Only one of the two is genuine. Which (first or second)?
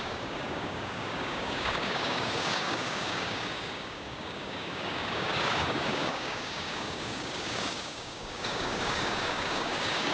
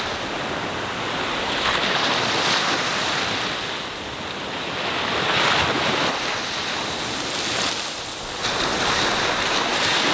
second